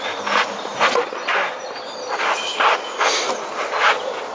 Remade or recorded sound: recorded